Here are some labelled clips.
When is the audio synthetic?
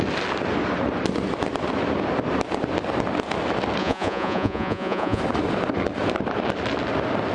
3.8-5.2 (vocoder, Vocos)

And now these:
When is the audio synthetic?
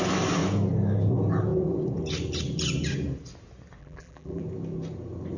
3.8-4.4 (vocoder, BigVGAN v2)